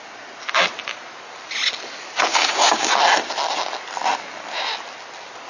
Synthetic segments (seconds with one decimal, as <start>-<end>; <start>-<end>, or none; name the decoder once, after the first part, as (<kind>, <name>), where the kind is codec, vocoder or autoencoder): 2.3-2.9 (codec, DAC)